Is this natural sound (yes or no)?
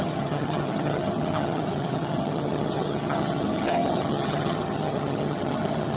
no